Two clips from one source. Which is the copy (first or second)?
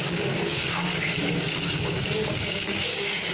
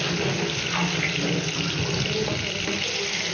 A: first